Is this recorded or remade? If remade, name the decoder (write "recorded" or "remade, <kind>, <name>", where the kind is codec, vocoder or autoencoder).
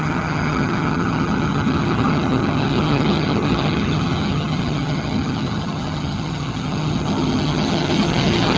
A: remade, vocoder, HiFi-GAN